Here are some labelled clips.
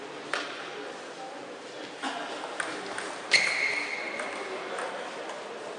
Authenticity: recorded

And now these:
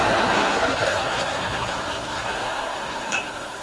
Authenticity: remade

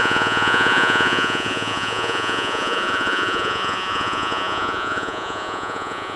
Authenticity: remade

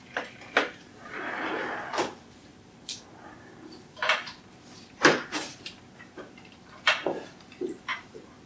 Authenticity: remade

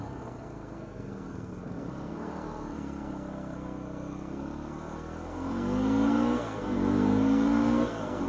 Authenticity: remade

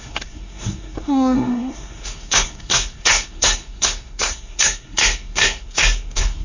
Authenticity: remade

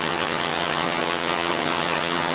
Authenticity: remade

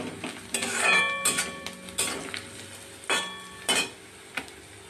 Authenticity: recorded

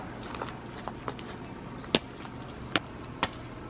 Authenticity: recorded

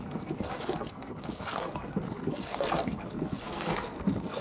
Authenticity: remade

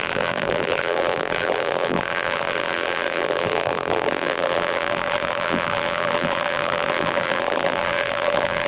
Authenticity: remade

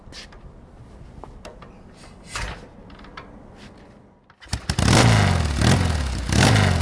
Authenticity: recorded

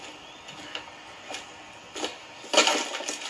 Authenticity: recorded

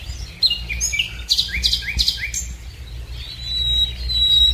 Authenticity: recorded